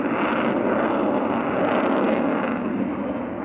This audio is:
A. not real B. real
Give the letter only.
B